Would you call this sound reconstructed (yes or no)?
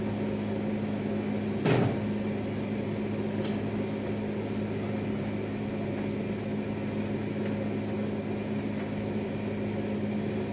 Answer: no